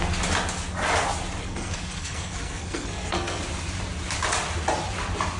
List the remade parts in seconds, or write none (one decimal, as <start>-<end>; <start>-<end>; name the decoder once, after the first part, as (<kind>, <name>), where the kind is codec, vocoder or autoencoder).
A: 1.4-3.4 (codec, SNAC)